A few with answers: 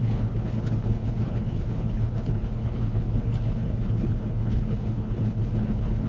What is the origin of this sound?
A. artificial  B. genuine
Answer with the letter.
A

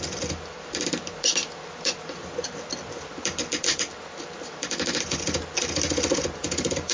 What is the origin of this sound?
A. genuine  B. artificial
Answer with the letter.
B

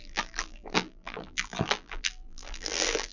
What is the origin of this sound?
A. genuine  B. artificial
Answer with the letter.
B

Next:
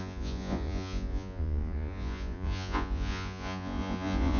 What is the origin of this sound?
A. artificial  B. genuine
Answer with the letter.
A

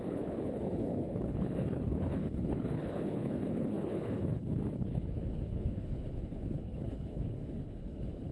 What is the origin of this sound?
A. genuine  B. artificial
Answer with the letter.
B